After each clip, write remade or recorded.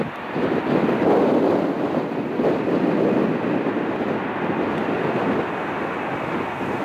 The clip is recorded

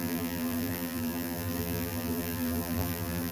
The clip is remade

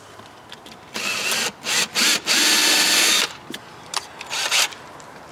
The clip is recorded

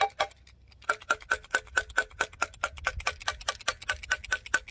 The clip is recorded